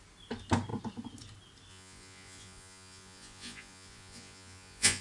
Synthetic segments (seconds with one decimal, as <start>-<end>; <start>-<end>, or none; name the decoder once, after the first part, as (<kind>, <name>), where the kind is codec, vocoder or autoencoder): 1.7-5.0 (vocoder, Vocos)